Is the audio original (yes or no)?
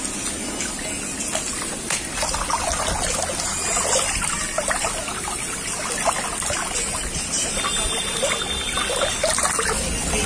yes